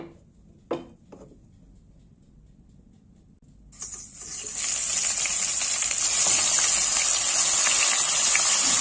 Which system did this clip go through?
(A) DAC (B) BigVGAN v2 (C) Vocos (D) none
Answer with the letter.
D